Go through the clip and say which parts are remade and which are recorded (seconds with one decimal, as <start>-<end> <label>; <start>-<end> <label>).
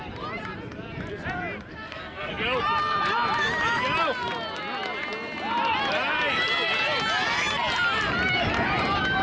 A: 0.0-1.7 recorded; 1.7-2.3 remade; 2.3-9.2 recorded